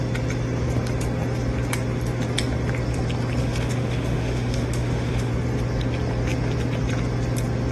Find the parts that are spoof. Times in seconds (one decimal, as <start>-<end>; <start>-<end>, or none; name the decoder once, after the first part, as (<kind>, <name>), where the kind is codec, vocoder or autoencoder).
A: 3.4-5.3 (autoencoder, DAC-VAE)